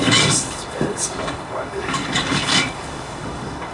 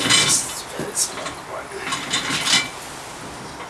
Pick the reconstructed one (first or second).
first